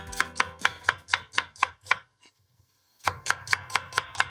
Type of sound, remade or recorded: remade